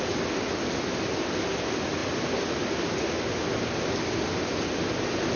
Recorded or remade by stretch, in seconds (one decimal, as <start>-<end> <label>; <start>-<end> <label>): 0.0-5.4 recorded